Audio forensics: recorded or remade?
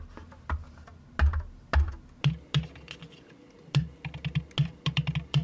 recorded